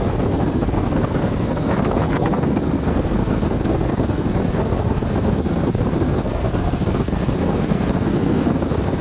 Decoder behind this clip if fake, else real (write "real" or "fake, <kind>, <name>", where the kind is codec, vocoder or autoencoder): fake, codec, SNAC